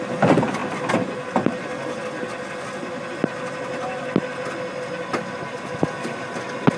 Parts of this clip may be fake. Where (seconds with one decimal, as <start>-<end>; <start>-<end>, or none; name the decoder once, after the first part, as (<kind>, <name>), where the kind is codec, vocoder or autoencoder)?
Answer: none